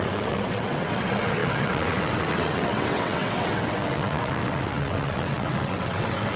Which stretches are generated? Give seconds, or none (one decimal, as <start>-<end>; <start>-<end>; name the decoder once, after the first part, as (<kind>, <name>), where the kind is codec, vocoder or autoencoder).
0.0-6.4 (vocoder, WaveNeXt)